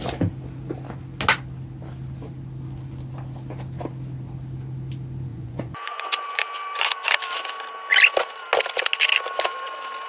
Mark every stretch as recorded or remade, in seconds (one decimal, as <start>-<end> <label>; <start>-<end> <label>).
0.0-5.3 recorded; 5.3-7.1 remade; 7.1-10.1 recorded